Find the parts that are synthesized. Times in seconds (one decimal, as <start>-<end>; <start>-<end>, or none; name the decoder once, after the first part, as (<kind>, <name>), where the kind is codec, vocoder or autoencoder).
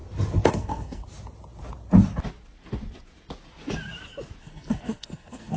0.5-1.0 (codec, SNAC); 4.4-5.6